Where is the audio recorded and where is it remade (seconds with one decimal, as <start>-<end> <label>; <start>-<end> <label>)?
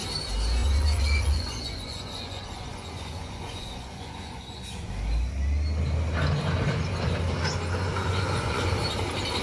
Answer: 0.0-0.6 recorded; 0.6-4.9 remade; 4.9-7.9 recorded; 7.9-8.7 remade; 8.7-9.4 recorded